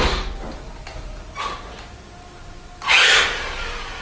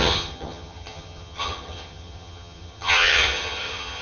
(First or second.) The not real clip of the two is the second